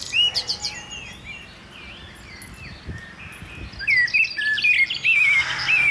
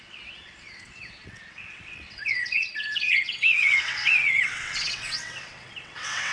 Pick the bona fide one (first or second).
first